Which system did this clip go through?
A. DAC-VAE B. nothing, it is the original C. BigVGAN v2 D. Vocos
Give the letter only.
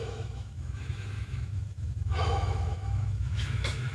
A